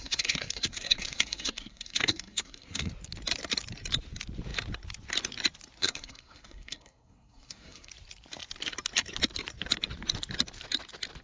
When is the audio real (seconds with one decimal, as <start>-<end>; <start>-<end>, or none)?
2.9-5.8; 7.9-11.2

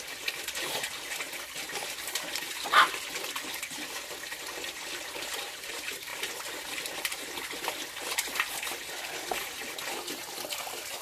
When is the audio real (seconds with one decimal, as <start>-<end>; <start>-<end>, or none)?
0.0-11.0

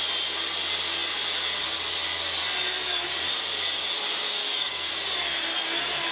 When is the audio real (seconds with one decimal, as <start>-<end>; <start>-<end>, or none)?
0.0-4.4; 4.9-6.1

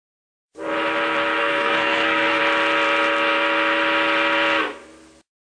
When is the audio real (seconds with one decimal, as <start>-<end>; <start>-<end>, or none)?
0.0-1.4; 2.4-5.4

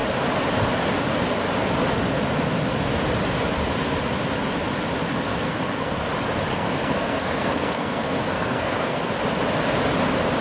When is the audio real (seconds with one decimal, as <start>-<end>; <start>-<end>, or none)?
0.0-5.1; 6.1-6.5; 9.1-10.4